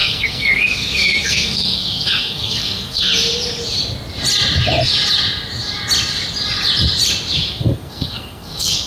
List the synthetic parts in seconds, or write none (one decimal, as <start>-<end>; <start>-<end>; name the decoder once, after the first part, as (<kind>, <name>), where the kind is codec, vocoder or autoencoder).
0.0-3.1 (codec, SNAC); 7.5-8.9